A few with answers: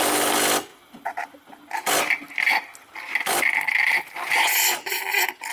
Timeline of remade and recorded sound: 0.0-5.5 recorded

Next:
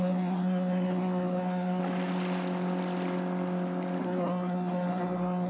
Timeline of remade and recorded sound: 0.0-1.8 remade; 1.8-4.0 recorded; 4.0-5.5 remade

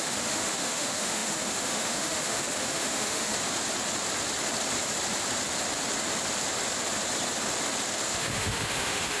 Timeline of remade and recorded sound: 0.0-3.3 remade; 3.3-8.1 recorded; 8.1-9.2 remade